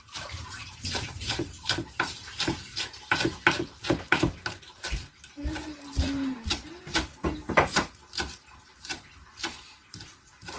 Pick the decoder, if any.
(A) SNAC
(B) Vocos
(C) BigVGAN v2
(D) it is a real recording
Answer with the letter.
C